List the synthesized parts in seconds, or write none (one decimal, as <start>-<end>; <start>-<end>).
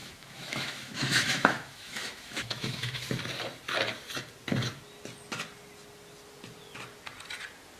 0.0-3.0